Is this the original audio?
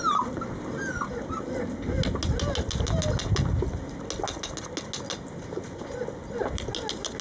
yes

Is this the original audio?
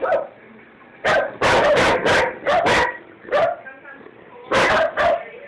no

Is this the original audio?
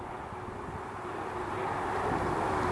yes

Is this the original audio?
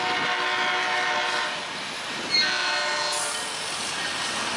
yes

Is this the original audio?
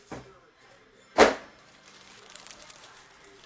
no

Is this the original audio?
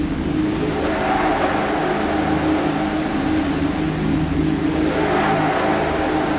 yes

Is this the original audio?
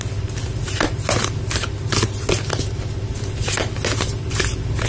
yes